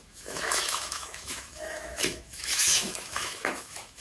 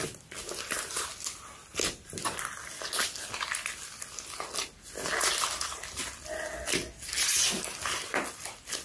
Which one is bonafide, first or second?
second